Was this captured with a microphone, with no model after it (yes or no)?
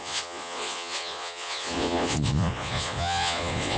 no